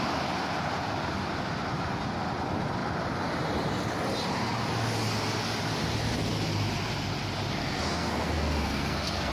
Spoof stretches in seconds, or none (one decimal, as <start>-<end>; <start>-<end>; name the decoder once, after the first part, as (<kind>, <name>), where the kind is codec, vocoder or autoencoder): 7.6-9.3 (codec, SNAC)